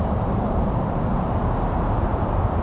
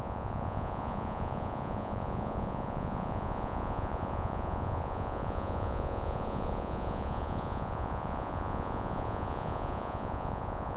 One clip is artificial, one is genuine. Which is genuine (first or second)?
first